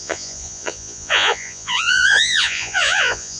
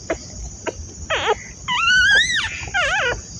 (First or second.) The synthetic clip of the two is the first